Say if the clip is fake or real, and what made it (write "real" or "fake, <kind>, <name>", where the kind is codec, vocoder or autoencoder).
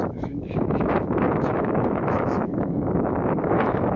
fake, autoencoder, DAC-VAE